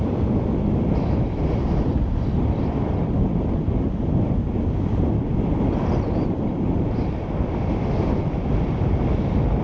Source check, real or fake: real